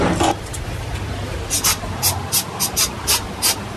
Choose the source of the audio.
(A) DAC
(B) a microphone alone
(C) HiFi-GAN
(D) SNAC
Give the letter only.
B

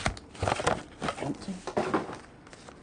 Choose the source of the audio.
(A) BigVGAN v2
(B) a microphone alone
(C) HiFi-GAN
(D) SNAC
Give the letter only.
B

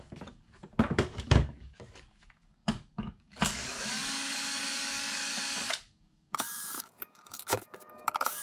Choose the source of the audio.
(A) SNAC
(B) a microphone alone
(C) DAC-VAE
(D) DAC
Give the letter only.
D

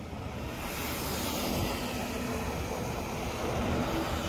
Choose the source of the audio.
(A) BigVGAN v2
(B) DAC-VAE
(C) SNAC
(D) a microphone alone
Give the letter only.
D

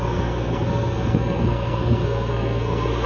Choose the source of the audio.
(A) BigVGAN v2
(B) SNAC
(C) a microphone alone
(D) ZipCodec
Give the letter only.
B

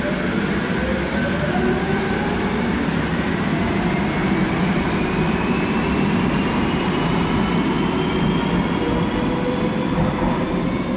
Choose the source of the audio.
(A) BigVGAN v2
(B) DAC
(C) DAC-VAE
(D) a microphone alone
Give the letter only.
D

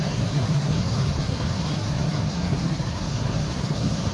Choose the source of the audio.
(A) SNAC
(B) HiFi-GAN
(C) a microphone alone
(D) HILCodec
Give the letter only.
A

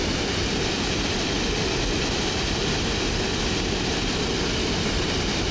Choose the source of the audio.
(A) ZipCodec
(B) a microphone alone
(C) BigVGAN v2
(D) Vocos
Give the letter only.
C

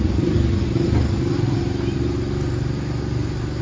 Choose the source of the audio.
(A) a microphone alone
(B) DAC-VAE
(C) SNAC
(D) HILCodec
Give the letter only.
A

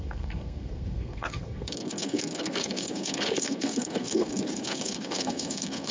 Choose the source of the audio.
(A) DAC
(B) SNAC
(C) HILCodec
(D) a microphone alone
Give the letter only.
B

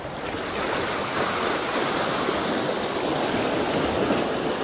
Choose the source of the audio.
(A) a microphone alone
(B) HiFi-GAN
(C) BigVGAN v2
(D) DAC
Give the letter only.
A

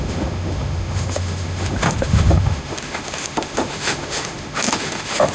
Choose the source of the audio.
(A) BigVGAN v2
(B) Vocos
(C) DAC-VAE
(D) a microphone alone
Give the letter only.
C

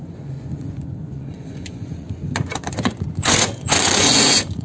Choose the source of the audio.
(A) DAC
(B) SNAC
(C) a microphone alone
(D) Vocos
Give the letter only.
D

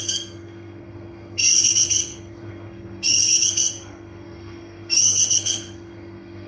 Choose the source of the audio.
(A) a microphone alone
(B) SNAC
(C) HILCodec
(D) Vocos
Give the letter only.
B